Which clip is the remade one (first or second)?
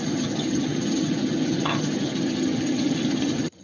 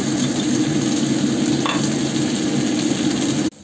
first